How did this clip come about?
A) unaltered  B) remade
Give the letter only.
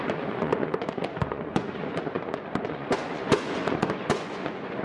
B